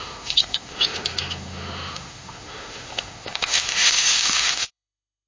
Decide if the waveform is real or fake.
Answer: fake